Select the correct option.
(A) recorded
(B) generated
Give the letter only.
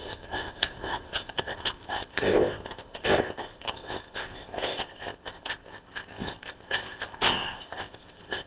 B